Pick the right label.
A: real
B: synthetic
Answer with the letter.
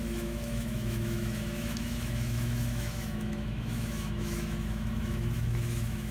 B